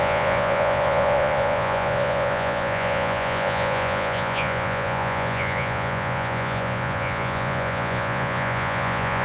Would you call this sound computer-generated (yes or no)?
yes